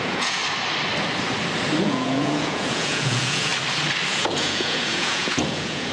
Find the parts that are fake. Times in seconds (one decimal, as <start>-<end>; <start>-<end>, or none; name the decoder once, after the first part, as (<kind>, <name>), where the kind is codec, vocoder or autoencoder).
0.0-0.4 (vocoder, Vocos); 1.8-3.5; 4.1-5.9